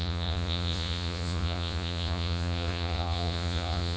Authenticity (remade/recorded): remade